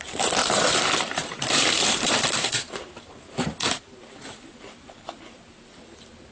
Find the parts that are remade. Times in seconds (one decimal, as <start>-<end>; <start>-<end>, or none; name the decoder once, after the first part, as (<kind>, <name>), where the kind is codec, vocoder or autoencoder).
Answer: 0.4-4.2 (vocoder, BigVGAN v2)